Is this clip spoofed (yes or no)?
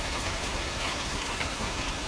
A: yes